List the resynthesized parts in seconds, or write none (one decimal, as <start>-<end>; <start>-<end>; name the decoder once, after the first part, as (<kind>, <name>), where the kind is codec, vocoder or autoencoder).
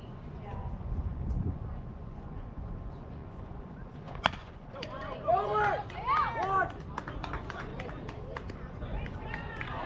0.0-5.5 (vocoder, Vocos); 7.2-7.7; 8.5-9.9